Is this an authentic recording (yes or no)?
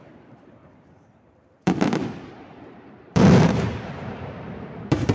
no